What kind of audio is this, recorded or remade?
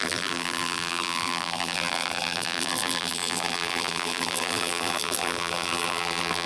remade